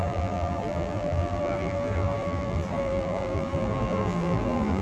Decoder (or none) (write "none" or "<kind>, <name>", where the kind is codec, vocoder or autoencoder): vocoder, BigVGAN v2